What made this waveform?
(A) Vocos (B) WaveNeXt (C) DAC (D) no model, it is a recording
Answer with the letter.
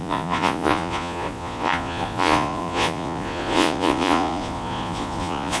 A